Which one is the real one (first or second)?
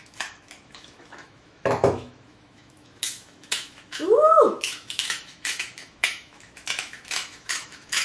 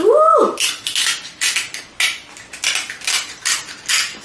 second